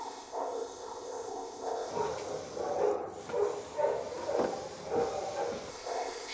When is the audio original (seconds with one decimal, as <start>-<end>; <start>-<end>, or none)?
1.9-5.7